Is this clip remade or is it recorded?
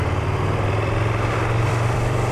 remade